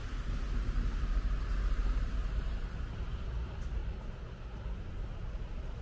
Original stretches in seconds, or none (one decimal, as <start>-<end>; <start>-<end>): 3.2-5.8